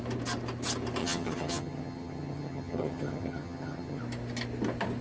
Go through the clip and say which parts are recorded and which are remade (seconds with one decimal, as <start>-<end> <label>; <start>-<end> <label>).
0.0-1.0 recorded; 1.0-4.0 remade; 4.0-5.0 recorded